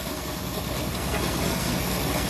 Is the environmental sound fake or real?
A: fake